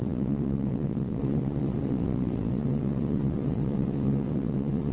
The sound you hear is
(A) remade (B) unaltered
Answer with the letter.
A